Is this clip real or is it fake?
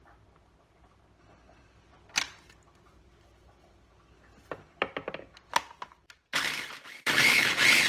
real